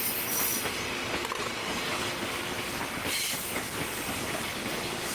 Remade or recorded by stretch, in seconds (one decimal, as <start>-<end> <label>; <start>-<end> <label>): 0.0-1.6 recorded; 1.6-5.1 remade